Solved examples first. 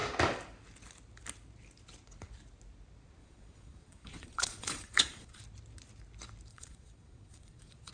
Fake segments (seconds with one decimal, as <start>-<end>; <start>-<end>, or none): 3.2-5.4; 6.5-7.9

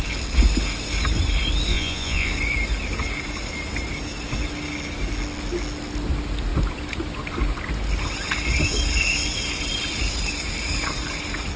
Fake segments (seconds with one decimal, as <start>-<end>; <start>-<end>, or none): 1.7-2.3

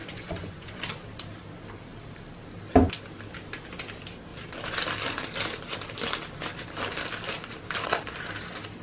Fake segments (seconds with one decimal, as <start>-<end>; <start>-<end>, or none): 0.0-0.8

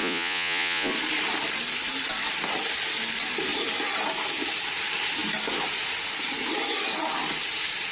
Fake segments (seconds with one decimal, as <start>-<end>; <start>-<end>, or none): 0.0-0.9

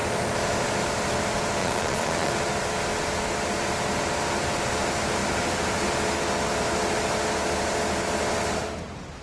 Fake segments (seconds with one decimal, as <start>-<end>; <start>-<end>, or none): 1.6-2.3

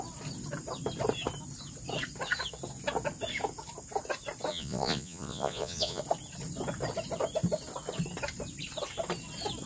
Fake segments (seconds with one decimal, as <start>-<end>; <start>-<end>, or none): 4.5-6.0